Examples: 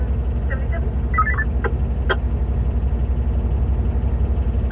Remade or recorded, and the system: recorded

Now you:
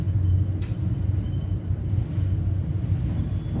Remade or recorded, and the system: recorded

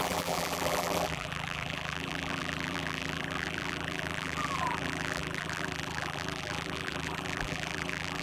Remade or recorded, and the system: remade, vocoder, BigVGAN v2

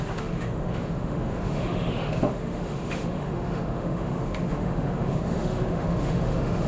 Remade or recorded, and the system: remade, autoencoder, DAC-VAE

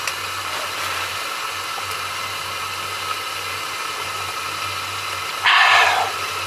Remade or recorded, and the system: recorded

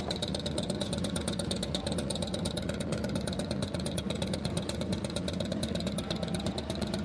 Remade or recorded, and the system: remade, vocoder, Vocos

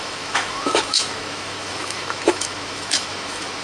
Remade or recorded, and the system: remade, autoencoder, DAC-VAE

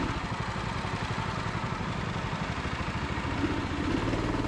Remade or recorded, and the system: recorded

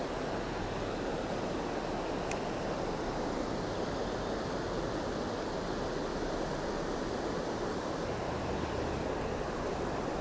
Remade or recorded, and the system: recorded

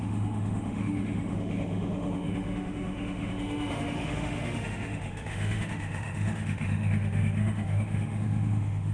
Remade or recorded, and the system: remade, autoencoder, DAC-VAE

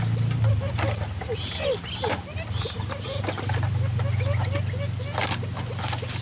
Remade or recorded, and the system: recorded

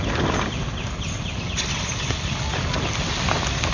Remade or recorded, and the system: recorded